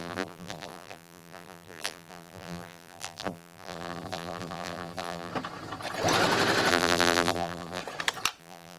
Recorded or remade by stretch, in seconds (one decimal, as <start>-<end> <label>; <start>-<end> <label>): 0.0-5.3 remade; 5.3-6.7 recorded; 6.7-7.8 remade; 7.8-8.4 recorded; 8.4-8.8 remade